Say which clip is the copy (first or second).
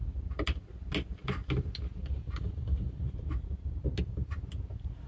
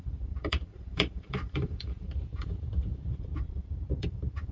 second